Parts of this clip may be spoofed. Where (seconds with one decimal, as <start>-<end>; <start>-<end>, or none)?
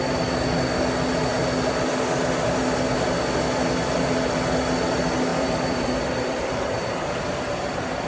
5.3-7.2